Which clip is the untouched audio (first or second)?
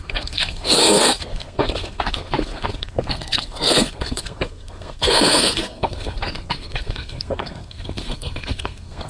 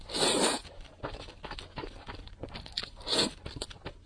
second